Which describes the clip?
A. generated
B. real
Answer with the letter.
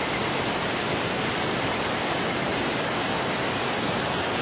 B